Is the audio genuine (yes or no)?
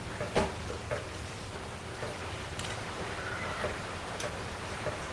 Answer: yes